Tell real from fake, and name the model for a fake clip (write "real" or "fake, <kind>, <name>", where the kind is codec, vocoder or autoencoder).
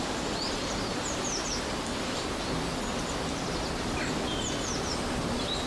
fake, vocoder, BigVGAN v2